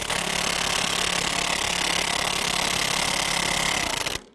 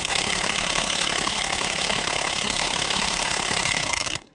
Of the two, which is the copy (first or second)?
second